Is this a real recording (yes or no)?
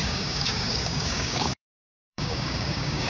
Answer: no